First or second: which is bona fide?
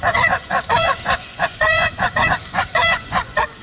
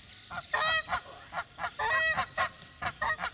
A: second